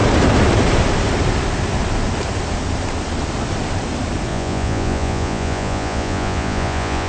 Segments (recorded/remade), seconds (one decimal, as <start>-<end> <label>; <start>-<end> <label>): 0.0-4.3 recorded; 4.3-7.1 remade